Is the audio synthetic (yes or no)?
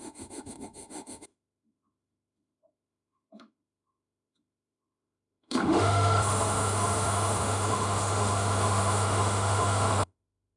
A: yes